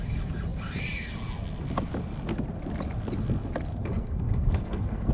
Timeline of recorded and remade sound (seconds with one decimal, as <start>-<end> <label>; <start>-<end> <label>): 0.0-3.8 recorded; 3.8-5.1 remade